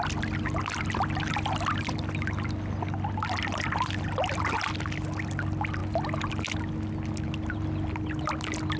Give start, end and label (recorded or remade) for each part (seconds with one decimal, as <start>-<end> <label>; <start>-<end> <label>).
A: 0.0-8.8 recorded